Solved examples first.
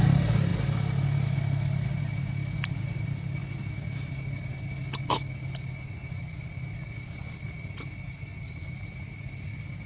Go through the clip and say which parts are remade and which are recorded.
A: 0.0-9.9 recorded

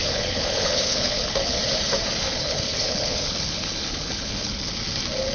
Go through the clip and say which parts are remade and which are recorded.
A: 0.0-1.6 remade; 1.6-2.3 recorded; 2.3-4.6 remade; 4.6-5.3 recorded

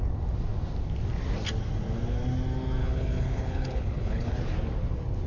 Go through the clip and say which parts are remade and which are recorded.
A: 0.0-2.8 recorded; 2.8-4.3 remade; 4.3-5.3 recorded

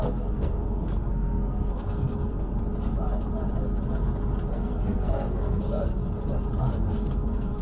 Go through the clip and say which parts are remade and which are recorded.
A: 0.0-2.5 remade; 2.5-4.5 recorded; 4.5-6.0 remade; 6.0-6.6 recorded; 6.6-7.6 remade

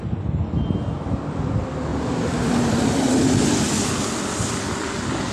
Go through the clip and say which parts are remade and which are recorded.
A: 0.0-1.9 recorded; 1.9-2.9 remade; 2.9-5.3 recorded

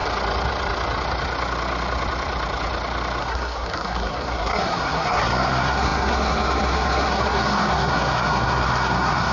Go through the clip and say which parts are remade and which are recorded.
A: 0.0-3.2 recorded; 3.2-9.3 remade

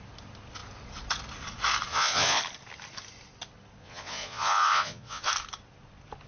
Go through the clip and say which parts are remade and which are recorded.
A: 0.0-1.9 recorded; 1.9-2.4 remade; 2.4-3.8 recorded; 3.8-5.3 remade; 5.3-6.3 recorded